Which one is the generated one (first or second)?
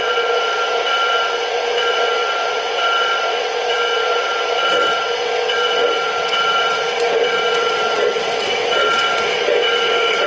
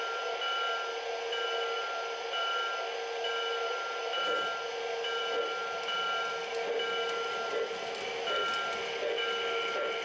first